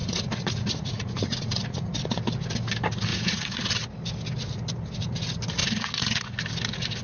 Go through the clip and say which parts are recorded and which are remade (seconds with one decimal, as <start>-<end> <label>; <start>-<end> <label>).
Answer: 0.0-2.0 remade; 2.0-3.1 recorded; 3.1-3.7 remade; 3.7-5.6 recorded; 5.6-6.2 remade; 6.2-7.0 recorded